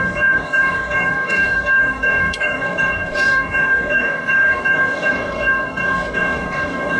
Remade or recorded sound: remade